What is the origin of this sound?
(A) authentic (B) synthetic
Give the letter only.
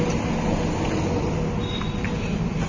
A